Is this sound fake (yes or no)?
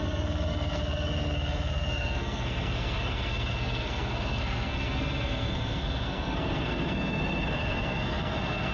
yes